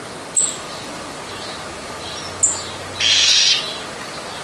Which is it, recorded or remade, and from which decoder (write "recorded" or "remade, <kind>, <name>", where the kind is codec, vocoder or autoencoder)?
recorded